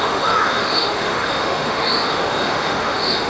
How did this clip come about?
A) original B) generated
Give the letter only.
B